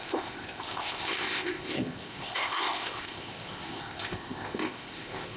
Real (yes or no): no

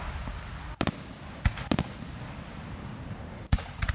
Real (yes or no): yes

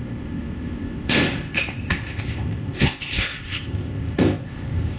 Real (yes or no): no